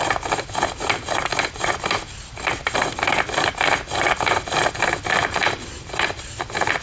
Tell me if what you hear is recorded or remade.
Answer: recorded